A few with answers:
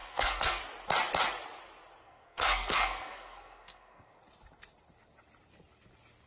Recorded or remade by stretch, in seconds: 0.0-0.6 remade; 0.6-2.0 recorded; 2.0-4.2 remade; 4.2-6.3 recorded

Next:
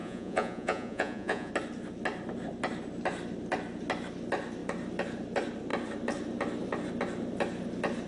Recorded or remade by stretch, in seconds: 0.0-1.5 remade; 1.5-8.1 recorded

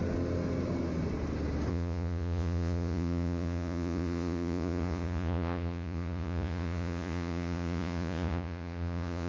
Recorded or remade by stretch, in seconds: 0.0-1.7 recorded; 1.7-9.3 remade

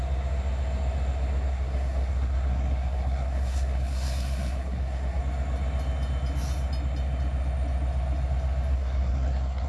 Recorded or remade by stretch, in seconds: 0.0-1.5 recorded; 1.5-5.2 remade; 5.2-8.7 recorded; 8.7-9.7 remade

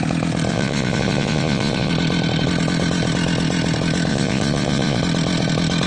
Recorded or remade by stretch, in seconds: 0.0-0.5 recorded; 0.5-1.9 remade; 1.9-4.1 recorded; 4.1-5.0 remade; 5.0-5.9 recorded

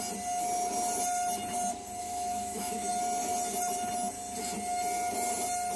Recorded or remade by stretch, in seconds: 0.0-2.0 recorded; 2.0-2.9 remade; 2.9-5.8 recorded